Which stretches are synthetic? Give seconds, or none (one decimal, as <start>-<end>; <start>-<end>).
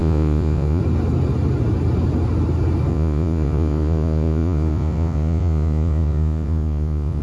0.0-0.8; 2.9-7.2